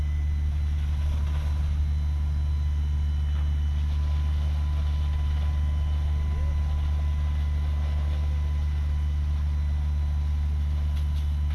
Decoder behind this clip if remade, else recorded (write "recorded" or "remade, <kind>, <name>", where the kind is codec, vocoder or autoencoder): recorded